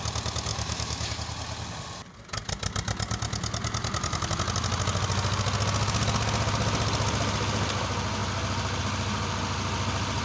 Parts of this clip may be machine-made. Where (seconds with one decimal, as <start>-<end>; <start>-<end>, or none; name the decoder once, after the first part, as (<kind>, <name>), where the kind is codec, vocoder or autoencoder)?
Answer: 0.5-1.1 (autoencoder, DAC-VAE)